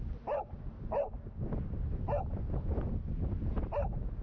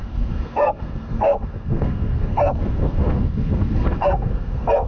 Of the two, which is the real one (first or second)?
first